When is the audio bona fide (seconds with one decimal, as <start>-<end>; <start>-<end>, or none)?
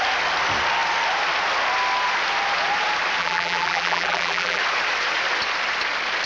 0.0-3.2; 4.6-6.3